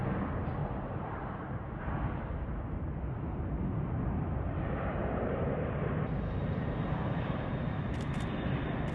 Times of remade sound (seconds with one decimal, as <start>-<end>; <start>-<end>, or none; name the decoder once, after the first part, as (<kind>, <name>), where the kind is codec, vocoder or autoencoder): 0.6-1.8 (vocoder, BigVGAN v2); 5.0-5.8; 6.4-8.1